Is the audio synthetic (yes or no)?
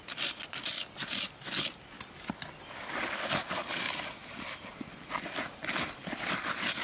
no